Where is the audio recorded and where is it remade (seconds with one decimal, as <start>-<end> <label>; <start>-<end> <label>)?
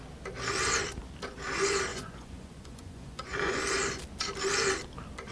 0.0-1.9 recorded; 1.9-3.6 remade; 3.6-5.3 recorded